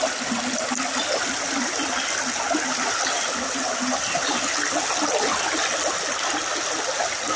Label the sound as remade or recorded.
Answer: recorded